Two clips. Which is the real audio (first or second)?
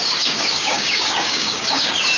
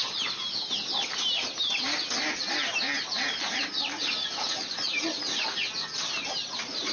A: second